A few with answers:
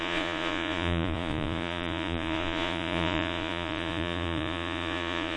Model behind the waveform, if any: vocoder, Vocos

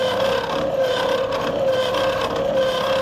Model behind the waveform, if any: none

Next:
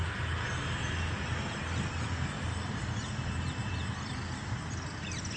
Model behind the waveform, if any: none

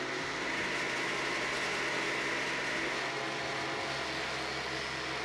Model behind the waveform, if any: none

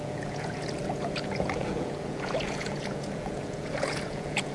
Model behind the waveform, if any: vocoder, Vocos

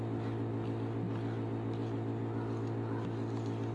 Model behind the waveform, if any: none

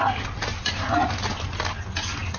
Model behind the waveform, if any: none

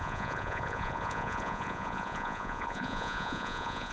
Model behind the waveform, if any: vocoder, Vocos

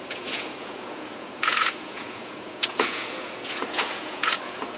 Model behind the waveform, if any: vocoder, Vocos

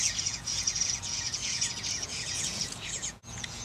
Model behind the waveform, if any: vocoder, Vocos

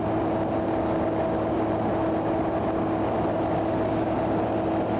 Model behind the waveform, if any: none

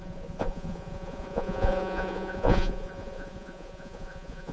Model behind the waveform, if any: vocoder, Vocos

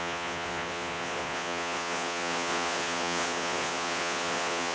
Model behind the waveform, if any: vocoder, Vocos